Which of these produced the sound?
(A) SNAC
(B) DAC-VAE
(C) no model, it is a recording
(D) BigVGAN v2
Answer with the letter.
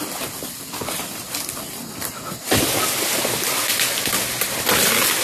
C